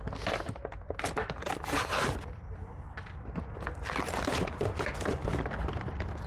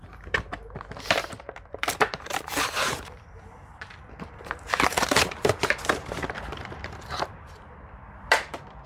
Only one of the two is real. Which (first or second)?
first